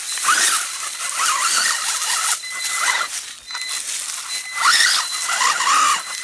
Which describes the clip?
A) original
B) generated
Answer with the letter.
A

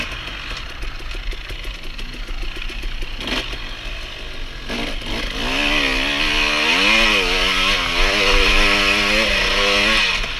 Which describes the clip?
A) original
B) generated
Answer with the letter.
A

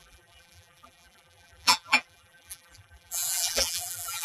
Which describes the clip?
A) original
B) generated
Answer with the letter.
B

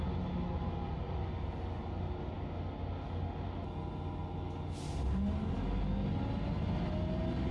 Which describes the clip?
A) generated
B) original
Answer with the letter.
B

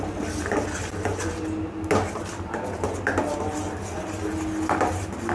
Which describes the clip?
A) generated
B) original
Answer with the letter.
B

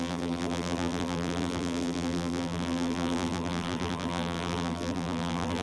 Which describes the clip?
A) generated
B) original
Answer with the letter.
A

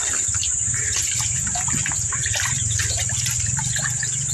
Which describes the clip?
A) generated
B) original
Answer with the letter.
B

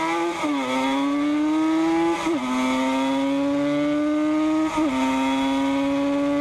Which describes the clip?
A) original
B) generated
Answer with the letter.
A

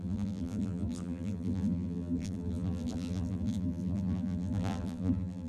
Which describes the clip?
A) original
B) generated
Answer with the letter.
B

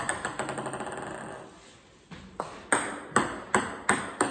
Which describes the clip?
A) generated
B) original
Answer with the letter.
B